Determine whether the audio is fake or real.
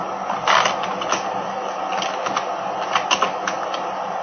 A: real